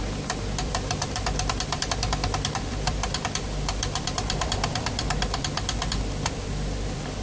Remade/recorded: remade